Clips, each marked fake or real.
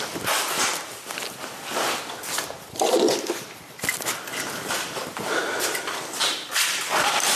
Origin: fake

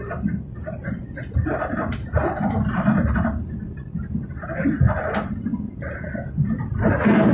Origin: real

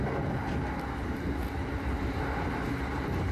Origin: real